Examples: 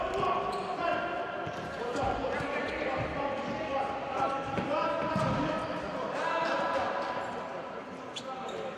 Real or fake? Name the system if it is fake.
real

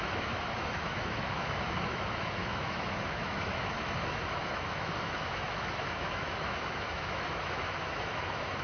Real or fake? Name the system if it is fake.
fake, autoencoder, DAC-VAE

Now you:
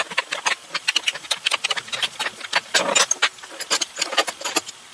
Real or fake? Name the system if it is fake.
real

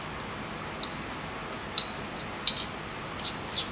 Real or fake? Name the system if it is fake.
real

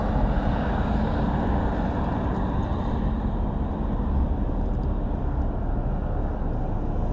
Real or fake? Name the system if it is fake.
real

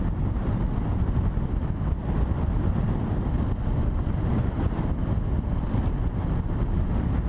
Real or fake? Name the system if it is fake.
real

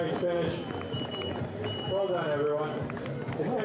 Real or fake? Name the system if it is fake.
real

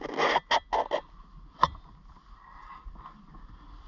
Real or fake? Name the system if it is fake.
real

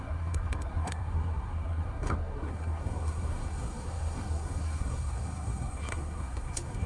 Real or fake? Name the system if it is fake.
fake, codec, SNAC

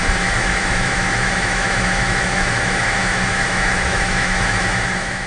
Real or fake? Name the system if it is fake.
fake, autoencoder, DAC-VAE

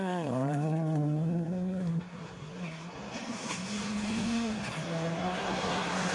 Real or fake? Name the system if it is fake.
fake, codec, SNAC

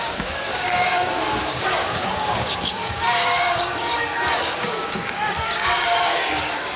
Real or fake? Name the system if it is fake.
fake, codec, DAC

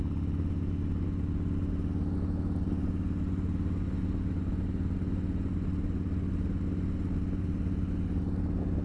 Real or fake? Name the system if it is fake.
real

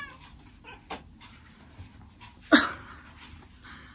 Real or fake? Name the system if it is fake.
real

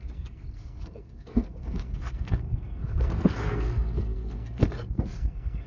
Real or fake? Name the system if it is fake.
fake, codec, SNAC